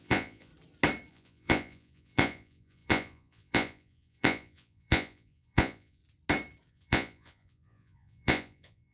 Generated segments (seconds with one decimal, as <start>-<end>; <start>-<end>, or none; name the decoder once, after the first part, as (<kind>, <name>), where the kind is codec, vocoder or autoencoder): 0.0-0.5 (vocoder, Vocos); 1.1-6.0; 6.7-8.9